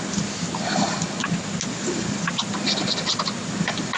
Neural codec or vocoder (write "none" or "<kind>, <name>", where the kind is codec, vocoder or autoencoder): none